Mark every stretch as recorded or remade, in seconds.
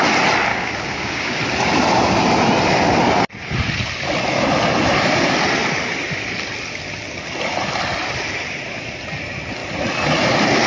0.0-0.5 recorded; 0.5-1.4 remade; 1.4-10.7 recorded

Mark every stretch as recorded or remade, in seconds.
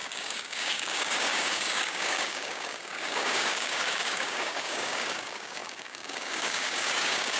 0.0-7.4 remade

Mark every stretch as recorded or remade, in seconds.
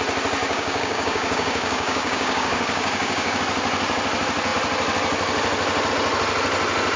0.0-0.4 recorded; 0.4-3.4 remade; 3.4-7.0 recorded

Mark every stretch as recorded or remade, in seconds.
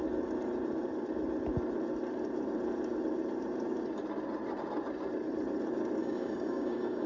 0.0-6.0 recorded; 6.0-7.1 remade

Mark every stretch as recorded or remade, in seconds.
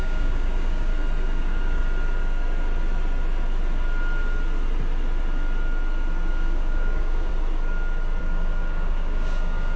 0.0-0.9 remade; 0.9-1.4 recorded; 1.4-1.8 remade; 1.8-6.3 recorded; 6.3-7.3 remade; 7.3-8.2 recorded; 8.2-9.8 remade